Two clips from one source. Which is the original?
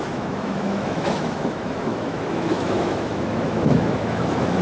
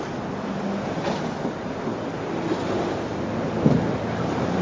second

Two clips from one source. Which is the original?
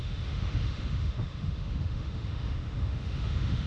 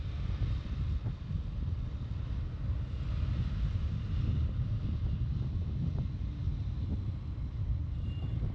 second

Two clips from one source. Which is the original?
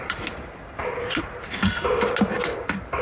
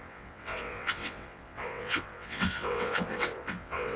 first